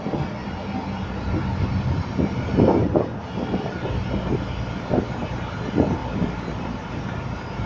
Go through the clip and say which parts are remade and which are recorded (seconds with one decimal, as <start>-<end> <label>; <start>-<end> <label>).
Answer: 0.0-7.7 recorded